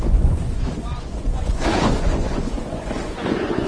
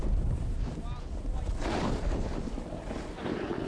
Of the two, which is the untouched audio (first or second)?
second